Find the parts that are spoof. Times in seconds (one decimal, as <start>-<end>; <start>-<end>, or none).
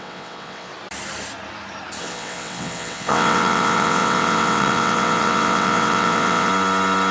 0.0-0.7; 2.0-6.5